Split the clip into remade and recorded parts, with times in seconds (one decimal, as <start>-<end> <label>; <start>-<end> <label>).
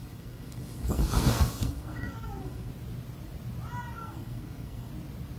0.0-2.7 remade; 2.7-4.0 recorded; 4.0-4.9 remade; 4.9-5.4 recorded